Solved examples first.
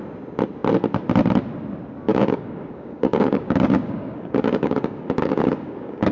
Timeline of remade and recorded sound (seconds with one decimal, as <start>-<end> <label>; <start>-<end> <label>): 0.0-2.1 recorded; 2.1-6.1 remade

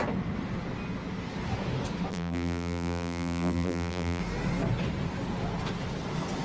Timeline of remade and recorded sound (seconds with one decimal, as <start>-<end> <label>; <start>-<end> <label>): 0.0-2.1 recorded; 2.1-4.2 remade; 4.2-6.4 recorded

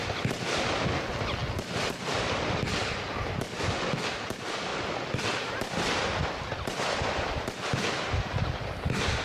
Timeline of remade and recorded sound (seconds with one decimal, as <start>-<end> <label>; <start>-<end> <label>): 0.0-0.6 remade; 0.6-1.4 recorded; 1.4-4.1 remade; 4.1-4.7 recorded; 4.7-6.8 remade; 6.8-9.2 recorded

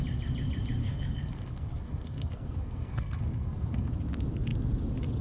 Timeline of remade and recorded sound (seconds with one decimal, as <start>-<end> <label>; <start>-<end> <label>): 0.0-0.8 recorded; 0.8-3.9 remade; 3.9-5.2 recorded

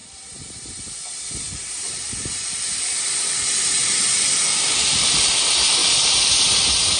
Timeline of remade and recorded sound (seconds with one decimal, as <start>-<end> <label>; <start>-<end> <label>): 0.0-1.3 remade; 1.3-3.8 recorded; 3.8-4.9 remade; 4.9-5.8 recorded; 5.8-6.3 remade; 6.3-7.0 recorded